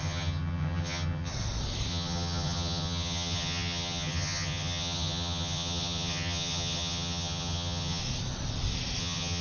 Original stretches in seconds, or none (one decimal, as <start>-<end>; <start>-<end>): 1.3-1.9; 8.0-9.0